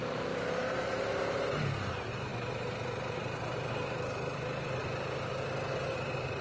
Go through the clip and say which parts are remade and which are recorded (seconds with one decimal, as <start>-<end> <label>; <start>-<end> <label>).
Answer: 0.0-4.8 remade; 4.8-5.9 recorded; 5.9-6.4 remade